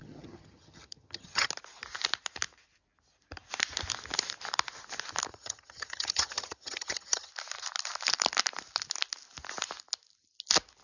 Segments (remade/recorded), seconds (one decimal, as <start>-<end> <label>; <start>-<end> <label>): 0.0-1.5 remade; 1.5-5.3 recorded; 5.3-7.3 remade; 7.3-10.8 recorded